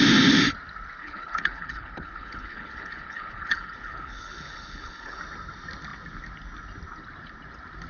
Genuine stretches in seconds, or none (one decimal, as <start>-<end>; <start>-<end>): 0.0-1.0; 5.2-7.9